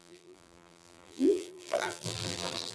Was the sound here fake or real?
fake